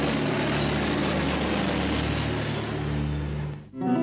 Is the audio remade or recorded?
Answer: recorded